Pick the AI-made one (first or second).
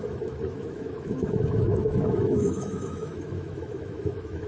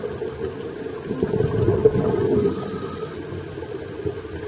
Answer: first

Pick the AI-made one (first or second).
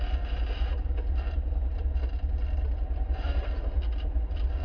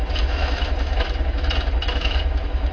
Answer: second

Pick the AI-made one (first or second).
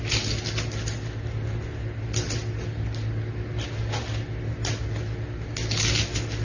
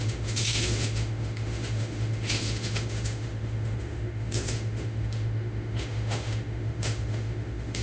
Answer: second